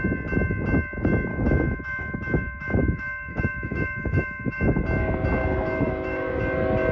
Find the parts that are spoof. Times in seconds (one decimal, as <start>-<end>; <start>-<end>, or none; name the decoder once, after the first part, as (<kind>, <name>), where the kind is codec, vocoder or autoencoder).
1.3-4.8 (autoencoder, DAC-VAE); 5.4-6.4